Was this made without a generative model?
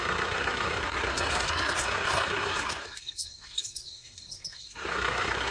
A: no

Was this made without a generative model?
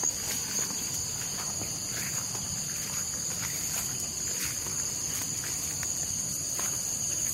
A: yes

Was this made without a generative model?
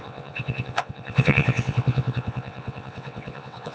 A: no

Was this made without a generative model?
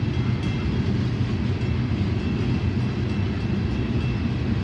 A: yes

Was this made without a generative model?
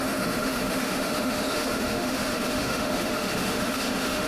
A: no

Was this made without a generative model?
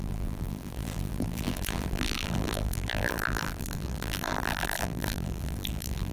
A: no